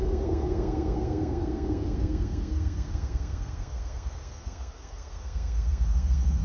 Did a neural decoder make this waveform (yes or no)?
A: yes